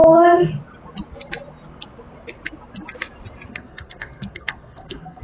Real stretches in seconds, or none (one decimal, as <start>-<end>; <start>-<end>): 0.5-3.5